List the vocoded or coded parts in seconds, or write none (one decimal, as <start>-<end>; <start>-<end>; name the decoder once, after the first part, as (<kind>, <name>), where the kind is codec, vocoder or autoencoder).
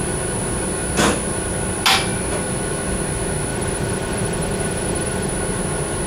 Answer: 3.5-5.3 (vocoder, BigVGAN v2)